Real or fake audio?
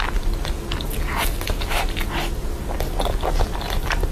real